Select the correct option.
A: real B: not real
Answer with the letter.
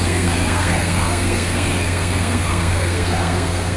B